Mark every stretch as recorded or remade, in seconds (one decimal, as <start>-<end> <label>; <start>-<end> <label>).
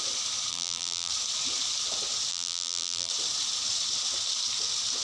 0.0-0.5 recorded; 0.5-1.1 remade; 1.1-2.3 recorded; 2.3-3.1 remade; 3.1-5.0 recorded